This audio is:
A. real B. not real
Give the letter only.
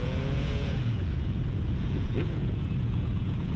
B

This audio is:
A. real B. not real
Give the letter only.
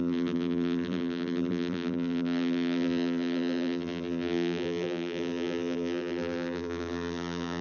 B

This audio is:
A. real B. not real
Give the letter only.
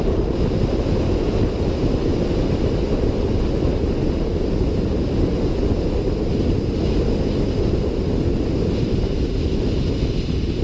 A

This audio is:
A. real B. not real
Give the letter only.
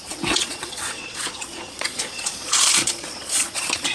B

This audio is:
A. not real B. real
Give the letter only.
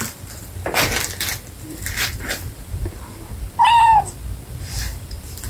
A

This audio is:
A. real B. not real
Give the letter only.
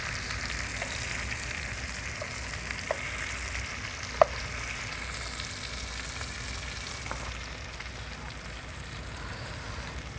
A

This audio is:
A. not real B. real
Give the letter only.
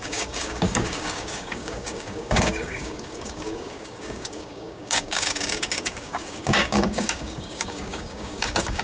A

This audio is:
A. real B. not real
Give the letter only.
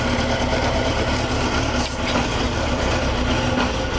A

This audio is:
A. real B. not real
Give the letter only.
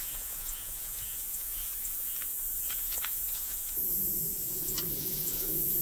B